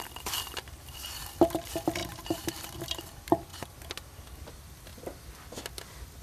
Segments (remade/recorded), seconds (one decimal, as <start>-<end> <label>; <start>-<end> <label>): 0.0-2.0 recorded; 2.0-3.0 remade; 3.0-6.2 recorded